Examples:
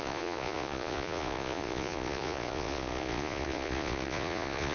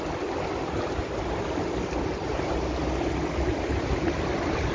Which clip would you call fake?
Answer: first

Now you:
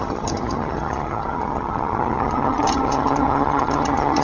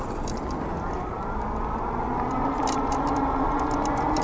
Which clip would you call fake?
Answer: first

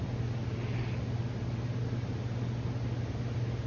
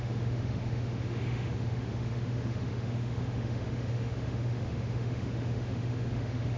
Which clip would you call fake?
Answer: second